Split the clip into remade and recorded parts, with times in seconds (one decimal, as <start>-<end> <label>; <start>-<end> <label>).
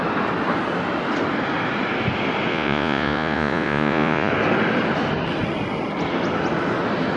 0.0-2.5 recorded; 2.5-4.3 remade; 4.3-7.2 recorded